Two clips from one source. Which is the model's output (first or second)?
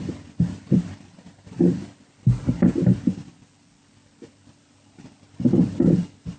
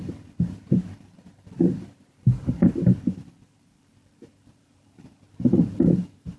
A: second